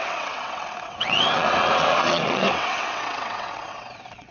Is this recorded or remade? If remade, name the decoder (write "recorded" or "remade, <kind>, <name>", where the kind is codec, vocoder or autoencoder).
remade, vocoder, WaveNeXt